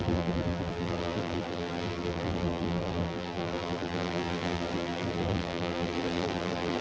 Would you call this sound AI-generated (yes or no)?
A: yes